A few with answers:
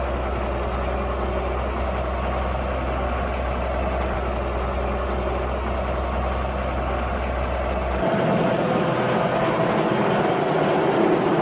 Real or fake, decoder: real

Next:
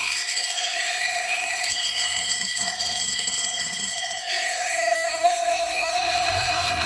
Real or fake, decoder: fake, codec, SNAC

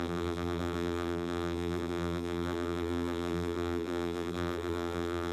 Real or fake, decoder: fake, vocoder, BigVGAN v2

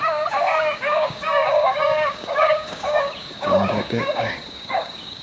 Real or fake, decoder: fake, codec, DAC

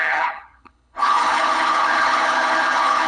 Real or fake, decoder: fake, codec, HILCodec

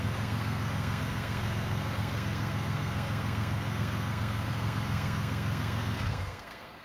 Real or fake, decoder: fake, codec, SNAC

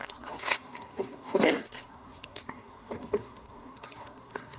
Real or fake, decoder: fake, codec, SNAC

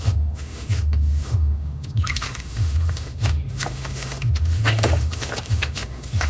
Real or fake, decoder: fake, autoencoder, DAC-VAE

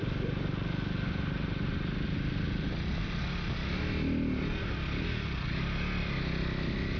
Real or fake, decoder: real